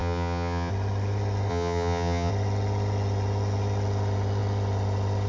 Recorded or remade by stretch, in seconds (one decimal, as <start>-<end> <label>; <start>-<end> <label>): 0.0-0.7 remade; 0.7-1.5 recorded; 1.5-2.3 remade; 2.3-5.3 recorded